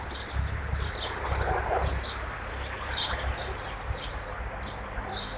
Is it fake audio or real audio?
real